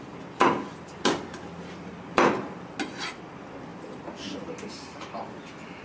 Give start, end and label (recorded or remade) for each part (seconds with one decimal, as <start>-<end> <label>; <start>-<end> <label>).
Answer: 0.0-5.8 recorded